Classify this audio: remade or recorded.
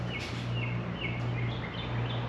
recorded